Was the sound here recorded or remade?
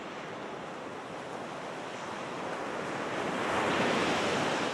recorded